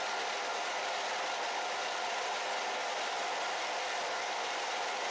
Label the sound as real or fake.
real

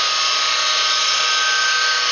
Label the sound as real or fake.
real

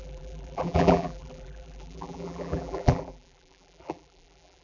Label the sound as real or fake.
fake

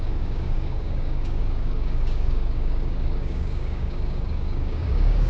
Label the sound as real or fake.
fake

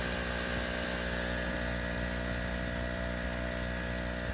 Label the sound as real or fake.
real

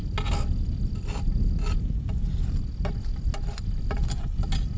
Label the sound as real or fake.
real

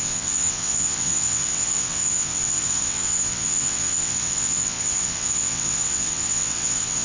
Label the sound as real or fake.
fake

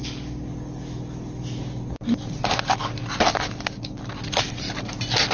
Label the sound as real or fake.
real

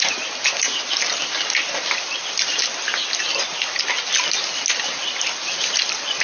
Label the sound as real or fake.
real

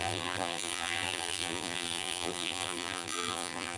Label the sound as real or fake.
fake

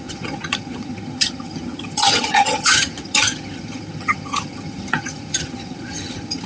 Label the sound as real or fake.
fake